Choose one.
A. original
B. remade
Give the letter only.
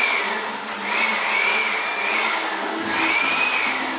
A